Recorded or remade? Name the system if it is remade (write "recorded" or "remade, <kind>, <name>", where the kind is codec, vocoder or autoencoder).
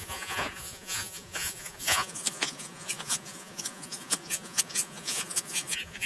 remade, vocoder, Vocos